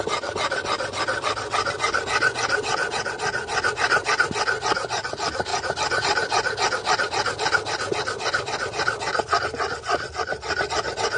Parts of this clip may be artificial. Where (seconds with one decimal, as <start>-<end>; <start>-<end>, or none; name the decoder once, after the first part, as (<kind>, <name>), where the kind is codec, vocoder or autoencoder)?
none